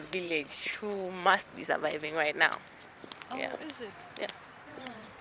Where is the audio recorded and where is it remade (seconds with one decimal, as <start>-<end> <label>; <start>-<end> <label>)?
0.0-1.5 remade; 1.5-4.6 recorded; 4.6-5.2 remade